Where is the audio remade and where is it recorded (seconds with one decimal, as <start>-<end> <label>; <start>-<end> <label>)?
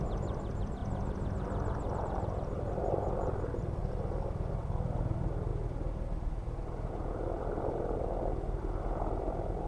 0.0-0.8 remade; 0.8-2.0 recorded; 2.0-3.8 remade; 3.8-4.5 recorded; 4.5-5.5 remade; 5.5-7.7 recorded; 7.7-9.7 remade